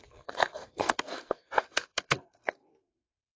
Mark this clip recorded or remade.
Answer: remade